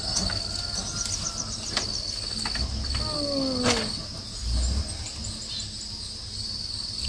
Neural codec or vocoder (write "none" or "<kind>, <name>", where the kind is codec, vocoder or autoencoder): none